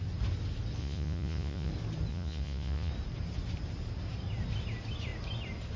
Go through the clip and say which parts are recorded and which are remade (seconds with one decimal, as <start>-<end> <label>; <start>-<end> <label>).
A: 0.0-0.8 recorded; 0.8-1.7 remade; 1.7-2.1 recorded; 2.1-2.9 remade; 2.9-5.8 recorded